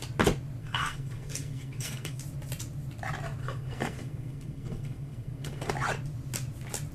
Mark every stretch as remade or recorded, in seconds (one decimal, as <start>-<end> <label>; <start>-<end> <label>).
0.0-0.6 recorded; 0.6-2.2 remade; 2.2-3.4 recorded; 3.4-5.7 remade; 5.7-6.9 recorded

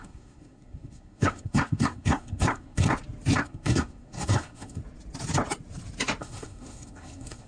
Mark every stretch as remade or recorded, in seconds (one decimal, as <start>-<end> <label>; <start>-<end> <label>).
0.0-2.9 remade; 2.9-3.4 recorded; 3.4-4.8 remade; 4.8-6.2 recorded; 6.2-7.5 remade

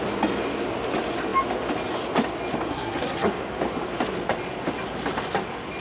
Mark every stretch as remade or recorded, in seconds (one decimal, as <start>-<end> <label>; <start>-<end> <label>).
0.0-2.7 recorded; 2.7-3.3 remade; 3.3-5.8 recorded

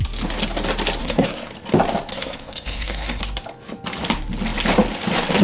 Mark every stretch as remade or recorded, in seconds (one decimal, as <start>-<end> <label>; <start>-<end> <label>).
0.0-1.0 recorded; 1.0-1.5 remade; 1.5-2.1 recorded; 2.1-3.2 remade; 3.2-5.4 recorded

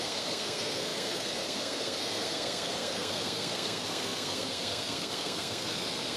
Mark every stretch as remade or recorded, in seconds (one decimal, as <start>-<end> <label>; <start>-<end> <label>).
0.0-6.2 remade

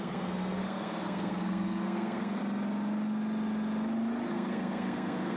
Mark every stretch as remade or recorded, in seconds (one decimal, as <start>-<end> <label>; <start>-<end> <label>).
0.0-2.4 remade; 2.4-4.3 recorded; 4.3-5.4 remade

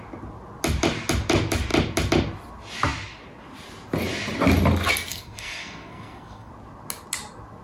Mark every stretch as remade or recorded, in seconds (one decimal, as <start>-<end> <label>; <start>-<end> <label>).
0.0-5.1 recorded; 5.1-6.5 remade; 6.5-7.6 recorded